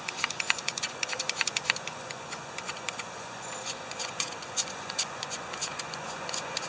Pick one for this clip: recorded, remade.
remade